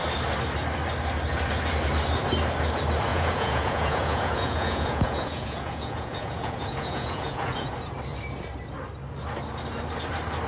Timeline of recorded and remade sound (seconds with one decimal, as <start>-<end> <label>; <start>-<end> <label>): 0.0-3.1 recorded; 3.1-7.7 remade; 7.7-10.5 recorded